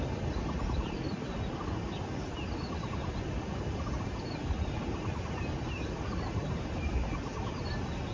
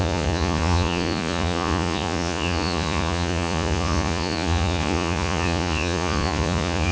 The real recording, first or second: first